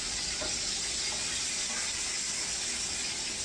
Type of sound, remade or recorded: recorded